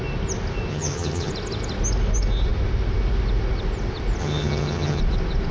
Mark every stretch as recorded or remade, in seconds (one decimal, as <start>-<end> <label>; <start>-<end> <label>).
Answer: 0.0-0.7 recorded; 0.7-1.3 remade; 1.3-4.2 recorded; 4.2-5.0 remade; 5.0-5.5 recorded